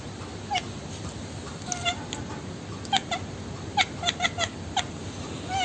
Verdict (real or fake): real